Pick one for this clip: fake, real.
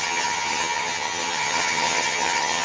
fake